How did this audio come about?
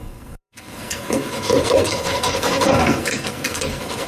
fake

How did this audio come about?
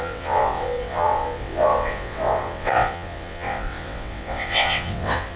fake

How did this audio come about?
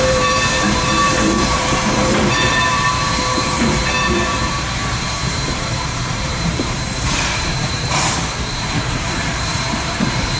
fake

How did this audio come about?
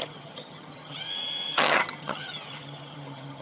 fake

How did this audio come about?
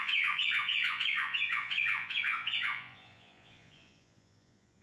fake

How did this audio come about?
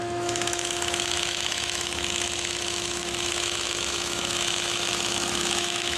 fake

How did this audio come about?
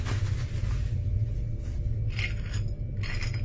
real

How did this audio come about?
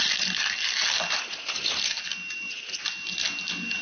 real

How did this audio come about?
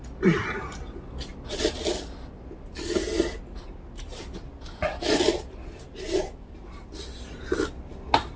real